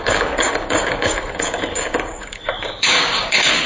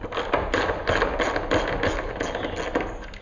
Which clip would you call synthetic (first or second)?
first